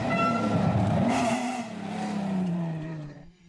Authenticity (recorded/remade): remade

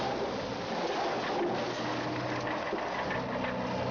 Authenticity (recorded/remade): recorded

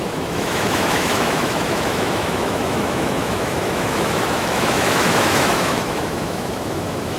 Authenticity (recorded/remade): remade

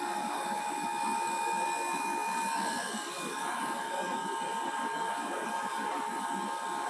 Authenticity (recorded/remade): remade